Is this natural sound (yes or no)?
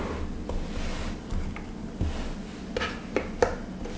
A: yes